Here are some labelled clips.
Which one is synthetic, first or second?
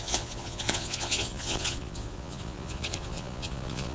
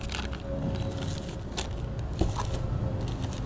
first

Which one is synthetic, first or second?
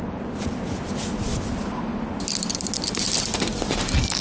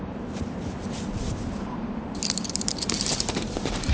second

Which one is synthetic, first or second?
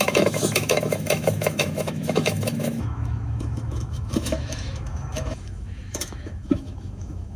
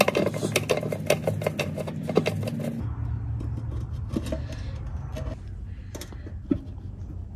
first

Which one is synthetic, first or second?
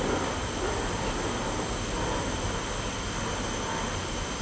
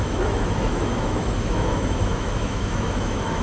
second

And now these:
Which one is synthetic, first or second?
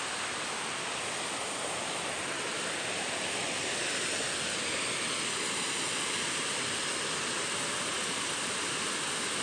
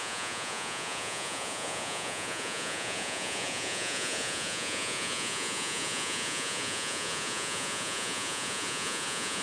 second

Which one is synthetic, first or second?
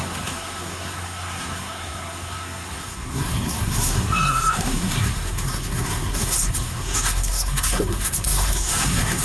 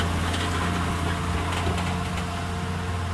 first